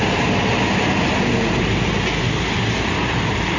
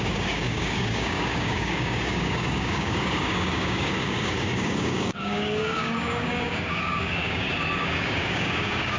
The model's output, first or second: second